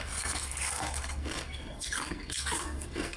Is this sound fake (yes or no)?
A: yes